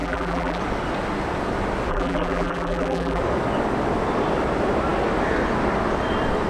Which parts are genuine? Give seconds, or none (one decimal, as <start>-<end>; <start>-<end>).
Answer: 0.6-1.9; 3.2-6.5